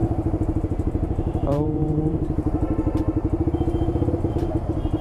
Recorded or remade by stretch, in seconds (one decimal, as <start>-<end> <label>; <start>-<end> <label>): 0.0-3.0 remade; 3.0-5.0 recorded